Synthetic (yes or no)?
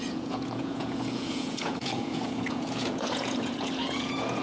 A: yes